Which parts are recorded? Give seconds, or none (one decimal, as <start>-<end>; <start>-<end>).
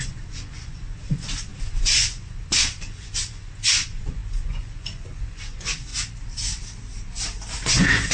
5.9-7.6